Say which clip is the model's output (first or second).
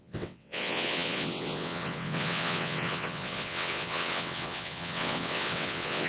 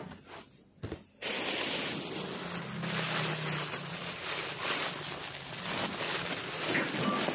first